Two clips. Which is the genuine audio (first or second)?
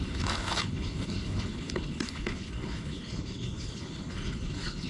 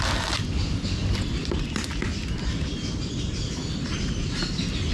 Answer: second